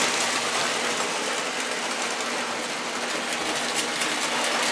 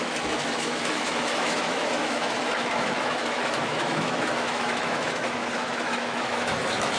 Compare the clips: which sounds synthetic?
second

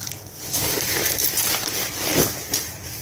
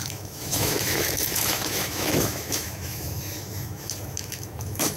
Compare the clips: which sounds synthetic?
second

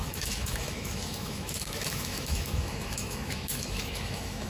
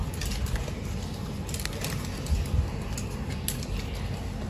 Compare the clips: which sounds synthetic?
first